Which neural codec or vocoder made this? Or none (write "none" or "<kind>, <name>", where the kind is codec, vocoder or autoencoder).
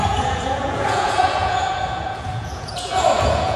vocoder, Vocos